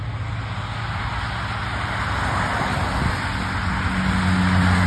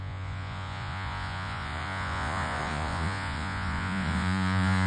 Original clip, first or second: first